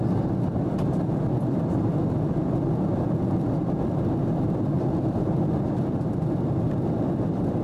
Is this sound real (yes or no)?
yes